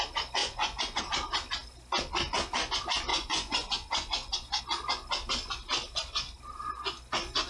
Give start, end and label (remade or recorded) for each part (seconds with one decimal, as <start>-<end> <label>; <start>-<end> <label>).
0.0-0.4 recorded; 0.4-1.0 remade; 1.0-3.1 recorded; 3.1-4.6 remade; 4.6-7.5 recorded